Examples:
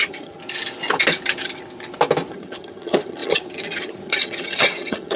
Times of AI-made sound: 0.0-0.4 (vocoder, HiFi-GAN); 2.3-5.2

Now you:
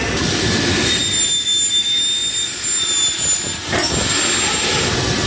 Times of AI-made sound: none

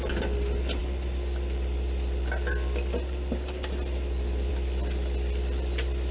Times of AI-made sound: none

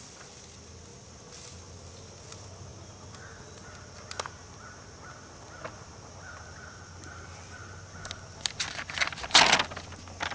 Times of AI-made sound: none